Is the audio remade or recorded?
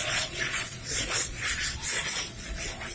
remade